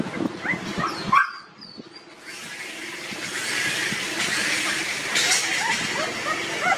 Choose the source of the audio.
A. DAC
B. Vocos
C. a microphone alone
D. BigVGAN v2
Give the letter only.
C